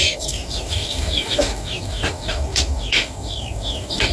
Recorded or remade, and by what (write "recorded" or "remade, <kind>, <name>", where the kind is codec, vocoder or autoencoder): remade, codec, DAC